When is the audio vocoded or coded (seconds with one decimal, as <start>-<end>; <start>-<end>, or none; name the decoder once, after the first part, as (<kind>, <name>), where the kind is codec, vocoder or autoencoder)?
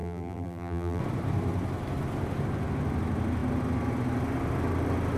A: 0.0-1.0 (vocoder, BigVGAN v2)